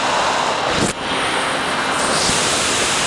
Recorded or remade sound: recorded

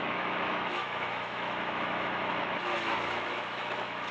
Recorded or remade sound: remade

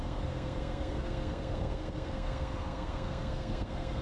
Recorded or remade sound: remade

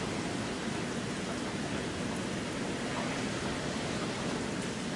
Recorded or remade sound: recorded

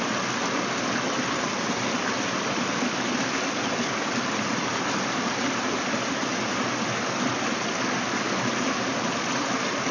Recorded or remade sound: recorded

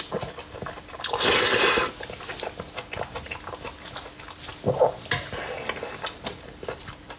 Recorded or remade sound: recorded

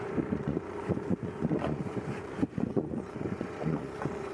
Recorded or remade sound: remade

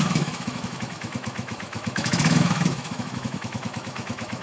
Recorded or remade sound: remade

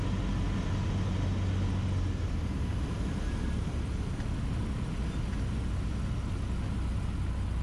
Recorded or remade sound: recorded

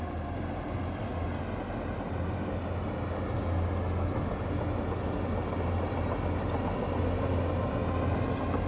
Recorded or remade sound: recorded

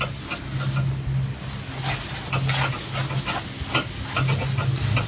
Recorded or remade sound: recorded